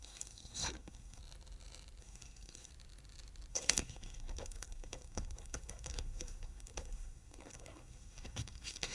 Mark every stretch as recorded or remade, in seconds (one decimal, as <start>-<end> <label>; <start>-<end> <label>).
0.0-1.2 remade; 1.2-2.0 recorded; 2.0-2.7 remade; 2.7-3.5 recorded; 3.5-8.9 remade